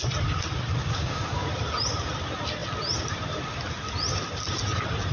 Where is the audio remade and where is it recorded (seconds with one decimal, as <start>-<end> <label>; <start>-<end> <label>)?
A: 0.0-0.8 recorded; 0.8-1.5 remade; 1.5-5.1 recorded